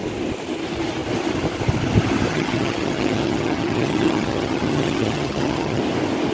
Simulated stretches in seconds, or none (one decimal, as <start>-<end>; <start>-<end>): 2.3-5.8